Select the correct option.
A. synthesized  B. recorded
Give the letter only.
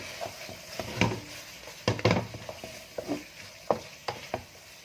B